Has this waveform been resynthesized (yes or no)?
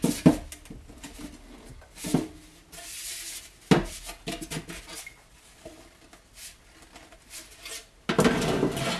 no